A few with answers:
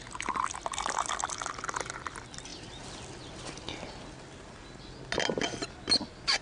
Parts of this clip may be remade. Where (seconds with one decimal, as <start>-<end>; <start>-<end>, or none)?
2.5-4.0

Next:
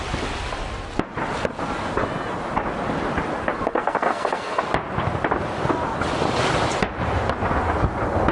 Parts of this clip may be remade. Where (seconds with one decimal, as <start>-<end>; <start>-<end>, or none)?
3.7-4.6

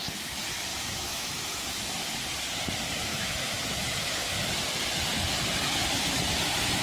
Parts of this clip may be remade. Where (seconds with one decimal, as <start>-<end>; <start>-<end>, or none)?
0.7-1.8; 3.1-4.3

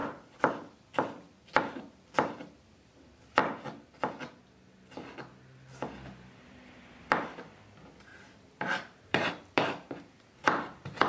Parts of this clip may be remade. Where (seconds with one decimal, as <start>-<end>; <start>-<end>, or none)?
1.6-3.4; 5.9-11.1